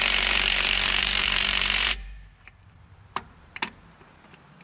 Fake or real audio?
fake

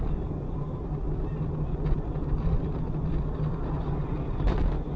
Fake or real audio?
fake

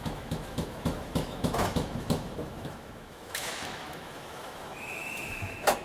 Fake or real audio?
fake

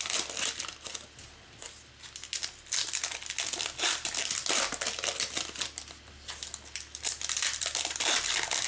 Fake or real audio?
real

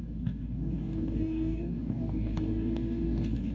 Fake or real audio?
fake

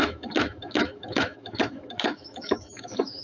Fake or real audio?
fake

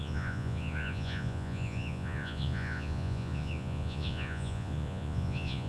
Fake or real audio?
fake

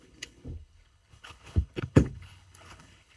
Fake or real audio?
fake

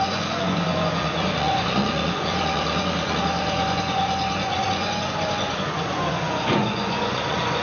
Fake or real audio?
fake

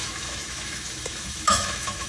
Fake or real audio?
fake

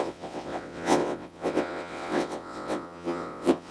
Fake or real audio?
fake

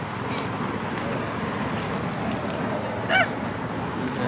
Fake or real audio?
real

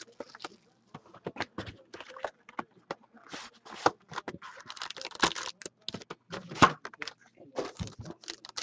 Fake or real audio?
real